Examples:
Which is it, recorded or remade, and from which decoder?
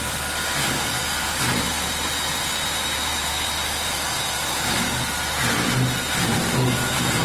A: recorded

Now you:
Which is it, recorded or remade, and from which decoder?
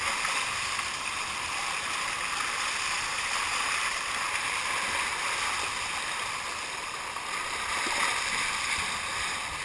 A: recorded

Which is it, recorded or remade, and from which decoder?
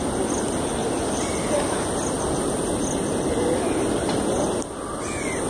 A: recorded